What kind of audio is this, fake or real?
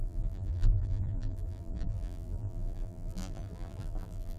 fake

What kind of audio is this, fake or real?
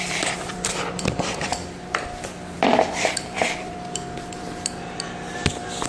fake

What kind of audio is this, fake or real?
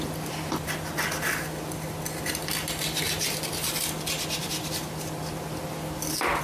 real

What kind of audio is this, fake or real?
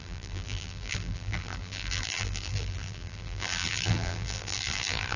fake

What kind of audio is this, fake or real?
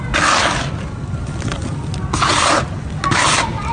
real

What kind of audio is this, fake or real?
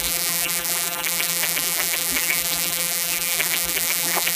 fake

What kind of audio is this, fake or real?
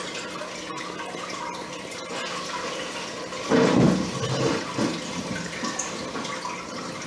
real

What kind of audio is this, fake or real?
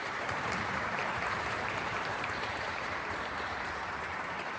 fake